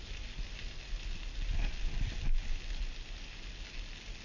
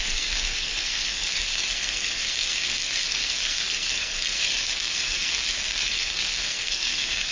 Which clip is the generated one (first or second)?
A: second